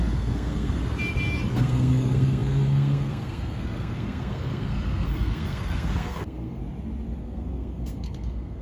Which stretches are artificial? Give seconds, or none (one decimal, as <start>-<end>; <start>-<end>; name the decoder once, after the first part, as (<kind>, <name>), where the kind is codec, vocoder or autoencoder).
0.0-0.8 (codec, SNAC); 1.5-6.6; 7.2-8.6